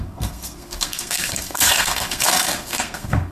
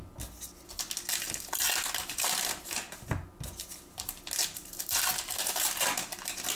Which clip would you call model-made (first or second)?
first